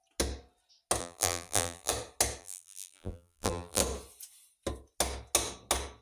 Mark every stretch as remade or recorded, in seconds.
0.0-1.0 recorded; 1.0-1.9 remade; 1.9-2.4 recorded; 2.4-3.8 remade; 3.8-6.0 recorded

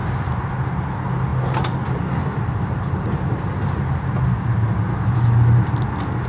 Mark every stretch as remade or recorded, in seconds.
0.0-6.3 recorded

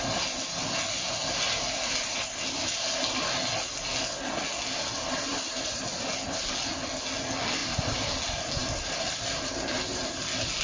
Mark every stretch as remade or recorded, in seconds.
0.0-5.3 recorded; 5.3-5.8 remade; 5.8-7.6 recorded; 7.6-8.2 remade; 8.2-8.6 recorded; 8.6-10.2 remade; 10.2-10.6 recorded

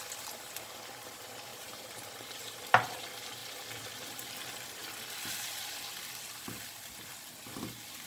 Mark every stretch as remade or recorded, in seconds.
0.0-1.5 recorded; 1.5-2.6 remade; 2.6-8.1 recorded

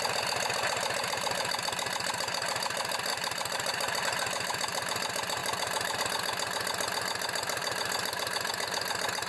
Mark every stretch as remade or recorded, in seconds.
0.0-3.1 recorded; 3.1-4.0 remade; 4.0-5.4 recorded; 5.4-6.0 remade; 6.0-7.6 recorded; 7.6-8.5 remade; 8.5-9.3 recorded

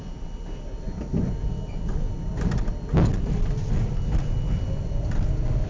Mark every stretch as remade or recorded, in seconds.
0.0-5.7 recorded

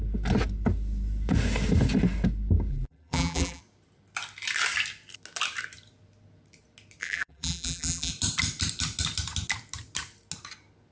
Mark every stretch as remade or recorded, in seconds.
0.0-2.7 recorded; 2.7-3.6 remade; 3.6-7.0 recorded; 7.0-8.1 remade; 8.1-10.9 recorded